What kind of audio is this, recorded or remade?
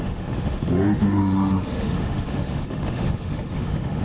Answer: remade